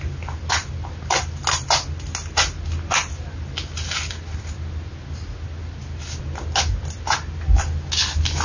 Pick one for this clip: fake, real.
real